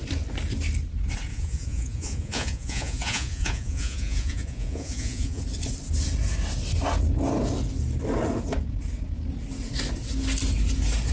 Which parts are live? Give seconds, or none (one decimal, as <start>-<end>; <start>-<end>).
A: 0.0-1.3; 5.4-11.1